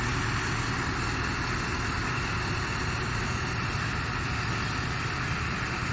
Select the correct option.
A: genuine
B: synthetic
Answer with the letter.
A